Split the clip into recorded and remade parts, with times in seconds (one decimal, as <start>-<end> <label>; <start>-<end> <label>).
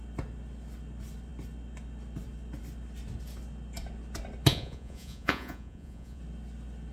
0.0-4.5 recorded; 4.5-6.2 remade; 6.2-6.9 recorded